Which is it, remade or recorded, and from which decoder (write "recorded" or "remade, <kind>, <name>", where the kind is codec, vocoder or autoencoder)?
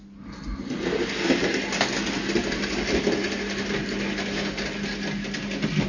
recorded